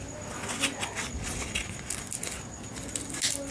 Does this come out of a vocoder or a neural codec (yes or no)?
no